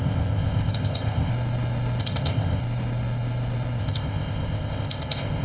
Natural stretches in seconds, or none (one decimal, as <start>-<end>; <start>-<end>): 1.3-2.0; 2.6-3.8